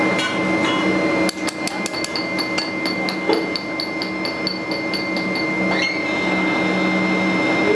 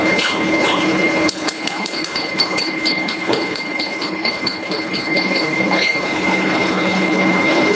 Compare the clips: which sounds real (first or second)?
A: first